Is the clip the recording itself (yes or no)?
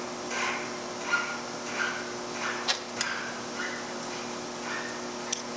yes